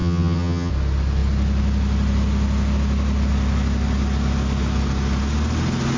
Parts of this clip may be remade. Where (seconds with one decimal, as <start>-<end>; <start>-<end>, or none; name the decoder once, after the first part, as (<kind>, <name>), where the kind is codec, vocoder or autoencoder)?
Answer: 0.0-0.7 (vocoder, HiFi-GAN)